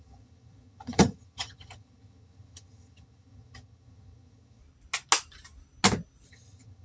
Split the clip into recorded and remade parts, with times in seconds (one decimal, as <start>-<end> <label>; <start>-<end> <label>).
0.0-4.6 remade; 4.6-6.3 recorded; 6.3-6.8 remade